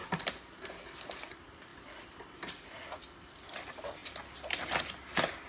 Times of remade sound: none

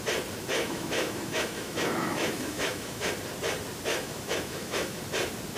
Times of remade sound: 0.5-3.1 (autoencoder, DAC-VAE); 3.9-5.0